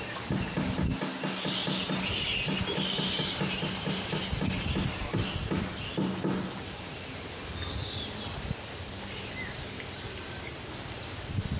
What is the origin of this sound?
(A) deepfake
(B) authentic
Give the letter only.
B